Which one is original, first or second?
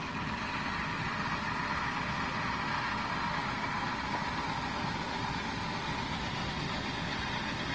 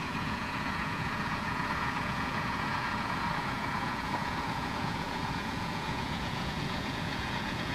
first